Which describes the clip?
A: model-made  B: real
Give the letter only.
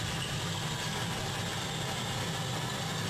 B